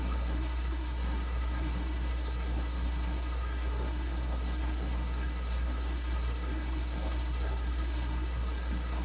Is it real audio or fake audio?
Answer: fake